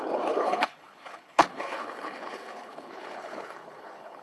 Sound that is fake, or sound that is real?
fake